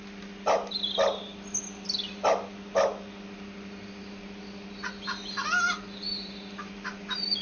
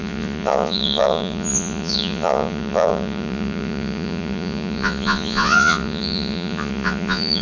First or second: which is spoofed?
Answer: second